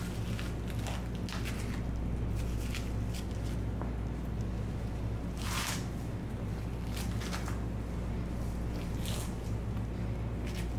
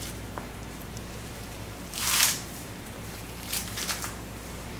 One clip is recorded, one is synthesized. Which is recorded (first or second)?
first